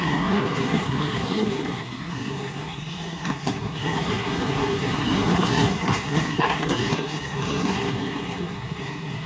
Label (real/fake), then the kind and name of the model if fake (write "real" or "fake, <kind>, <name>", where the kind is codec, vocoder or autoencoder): fake, codec, SNAC